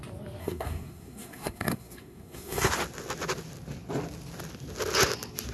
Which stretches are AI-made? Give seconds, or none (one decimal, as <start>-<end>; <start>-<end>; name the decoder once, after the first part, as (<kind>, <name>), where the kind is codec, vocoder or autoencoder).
0.4-2.7 (codec, SNAC)